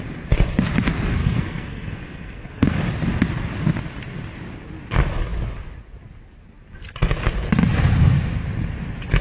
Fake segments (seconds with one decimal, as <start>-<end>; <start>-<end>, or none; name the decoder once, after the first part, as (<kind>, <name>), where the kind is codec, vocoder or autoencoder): 1.2-2.8 (codec, SNAC)